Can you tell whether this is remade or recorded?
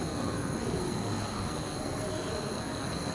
remade